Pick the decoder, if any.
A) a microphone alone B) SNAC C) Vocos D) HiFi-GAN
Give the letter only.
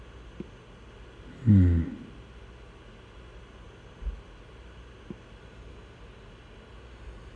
A